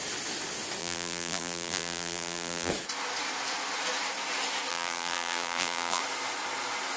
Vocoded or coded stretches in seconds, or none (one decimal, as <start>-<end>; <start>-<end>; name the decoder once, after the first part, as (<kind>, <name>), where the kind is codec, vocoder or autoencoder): 0.8-2.7 (vocoder, BigVGAN v2); 4.7-6.0